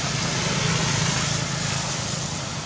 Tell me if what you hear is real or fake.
real